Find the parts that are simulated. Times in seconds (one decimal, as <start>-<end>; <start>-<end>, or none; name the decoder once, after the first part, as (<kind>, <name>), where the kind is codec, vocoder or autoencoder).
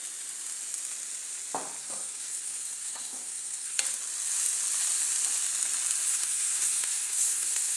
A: 1.8-3.8 (codec, SNAC); 6.1-7.8